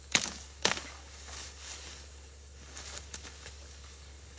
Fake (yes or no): yes